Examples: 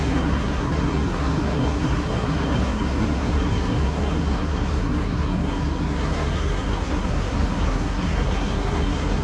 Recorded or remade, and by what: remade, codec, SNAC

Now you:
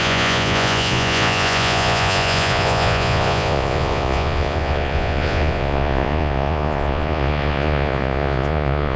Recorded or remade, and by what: remade, vocoder, Vocos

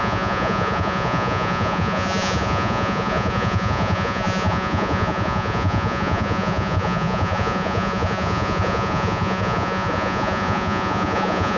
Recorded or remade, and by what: remade, vocoder, Vocos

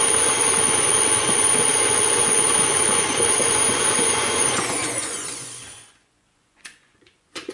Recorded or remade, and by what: remade, vocoder, Vocos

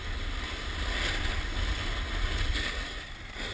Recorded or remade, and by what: recorded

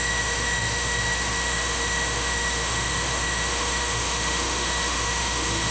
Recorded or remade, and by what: remade, autoencoder, DAC-VAE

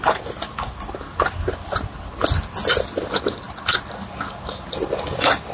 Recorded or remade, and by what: recorded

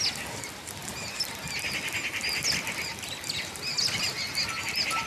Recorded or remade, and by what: recorded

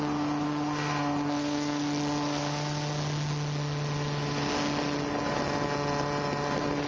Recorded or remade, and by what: recorded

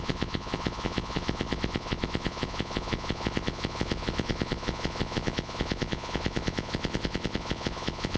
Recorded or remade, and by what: remade, vocoder, Vocos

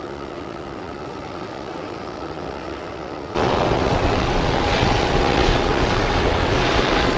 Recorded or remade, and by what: remade, vocoder, WaveNeXt